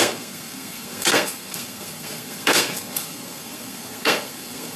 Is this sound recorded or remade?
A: remade